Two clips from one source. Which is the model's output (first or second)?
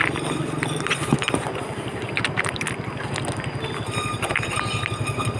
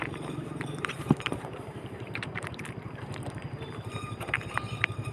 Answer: second